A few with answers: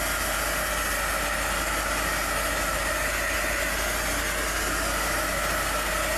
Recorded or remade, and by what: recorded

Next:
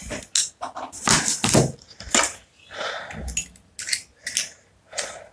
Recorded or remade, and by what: recorded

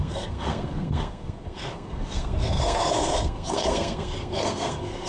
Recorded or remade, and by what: remade, codec, SNAC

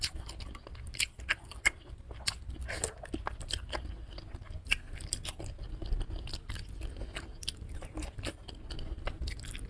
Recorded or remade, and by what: recorded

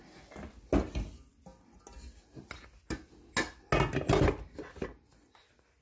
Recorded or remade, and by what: recorded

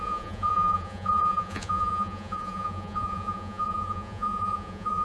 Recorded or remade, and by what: remade, vocoder, Vocos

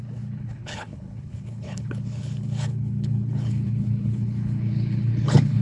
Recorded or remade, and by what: remade, codec, HILCodec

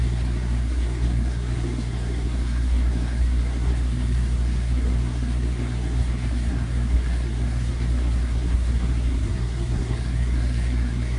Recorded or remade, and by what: remade, codec, SNAC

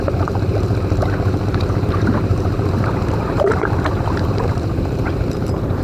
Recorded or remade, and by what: remade, vocoder, BigVGAN v2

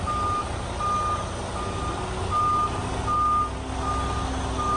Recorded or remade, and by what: recorded